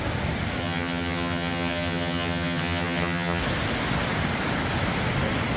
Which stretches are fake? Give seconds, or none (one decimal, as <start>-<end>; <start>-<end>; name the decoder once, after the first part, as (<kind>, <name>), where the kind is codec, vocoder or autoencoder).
0.6-3.4 (vocoder, HiFi-GAN)